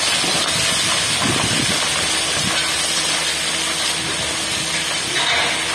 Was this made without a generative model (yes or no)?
yes